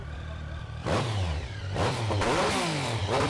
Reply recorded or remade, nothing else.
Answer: remade